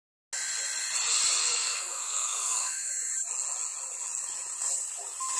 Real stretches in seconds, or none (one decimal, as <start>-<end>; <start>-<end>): 0.0-1.4; 2.9-5.4